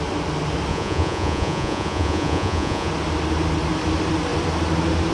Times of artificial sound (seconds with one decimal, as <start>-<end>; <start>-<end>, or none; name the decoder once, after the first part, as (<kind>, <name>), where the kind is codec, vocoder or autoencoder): 0.7-2.9 (vocoder, Vocos)

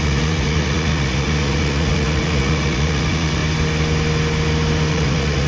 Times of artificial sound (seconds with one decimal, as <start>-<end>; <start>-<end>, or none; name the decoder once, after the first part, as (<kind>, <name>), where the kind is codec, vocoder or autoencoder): 0.0-3.4 (vocoder, Vocos); 4.9-5.5